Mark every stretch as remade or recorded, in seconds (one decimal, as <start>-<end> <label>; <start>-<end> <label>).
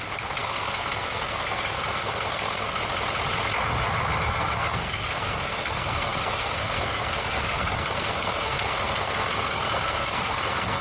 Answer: 0.0-2.8 remade; 2.8-4.2 recorded; 4.2-10.8 remade